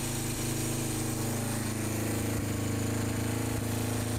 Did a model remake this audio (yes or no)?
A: no